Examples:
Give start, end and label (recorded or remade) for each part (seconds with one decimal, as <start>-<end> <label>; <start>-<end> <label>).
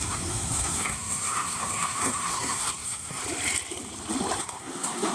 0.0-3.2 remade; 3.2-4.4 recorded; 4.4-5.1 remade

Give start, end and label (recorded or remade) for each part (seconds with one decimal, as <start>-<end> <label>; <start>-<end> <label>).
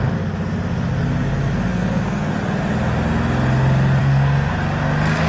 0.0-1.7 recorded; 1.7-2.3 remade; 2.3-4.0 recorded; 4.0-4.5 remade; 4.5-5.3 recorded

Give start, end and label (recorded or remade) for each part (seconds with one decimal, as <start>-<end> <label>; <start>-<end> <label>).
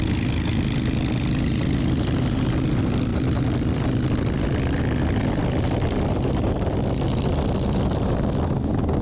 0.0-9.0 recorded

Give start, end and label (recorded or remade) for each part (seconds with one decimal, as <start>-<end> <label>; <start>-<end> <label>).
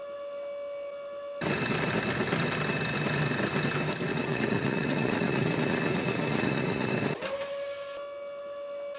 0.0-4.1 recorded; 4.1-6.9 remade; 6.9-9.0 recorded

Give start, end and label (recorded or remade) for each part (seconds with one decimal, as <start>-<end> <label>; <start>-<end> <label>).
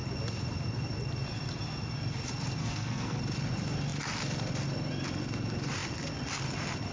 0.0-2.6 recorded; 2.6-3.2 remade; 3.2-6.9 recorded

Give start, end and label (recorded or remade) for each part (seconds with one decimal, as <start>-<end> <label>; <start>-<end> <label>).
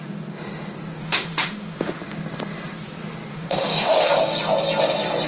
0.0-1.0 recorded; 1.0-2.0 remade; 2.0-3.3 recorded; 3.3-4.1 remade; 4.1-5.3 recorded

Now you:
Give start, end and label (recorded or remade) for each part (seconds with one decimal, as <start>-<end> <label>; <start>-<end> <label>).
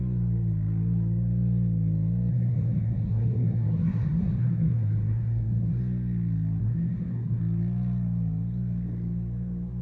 0.0-2.3 recorded; 2.3-5.8 remade; 5.8-6.6 recorded; 6.6-7.4 remade; 7.4-9.8 recorded